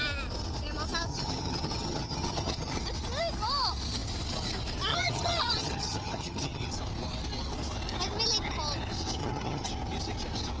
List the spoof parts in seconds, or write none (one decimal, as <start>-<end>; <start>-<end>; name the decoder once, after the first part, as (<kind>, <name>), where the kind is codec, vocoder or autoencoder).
1.1-2.8 (vocoder, HiFi-GAN); 4.9-6.7; 9.2-9.7